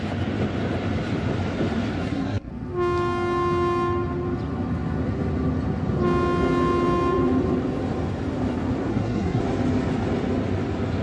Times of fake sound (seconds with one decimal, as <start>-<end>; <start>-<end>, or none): 2.0-2.5; 8.9-9.4